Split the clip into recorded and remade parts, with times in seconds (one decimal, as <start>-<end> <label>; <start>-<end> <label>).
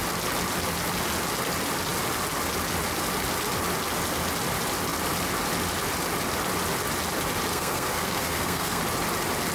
0.0-7.5 recorded; 7.5-8.8 remade; 8.8-9.5 recorded